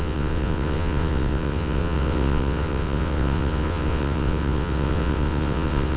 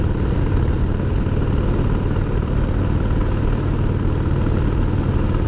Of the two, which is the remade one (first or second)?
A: first